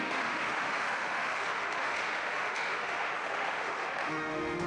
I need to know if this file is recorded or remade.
remade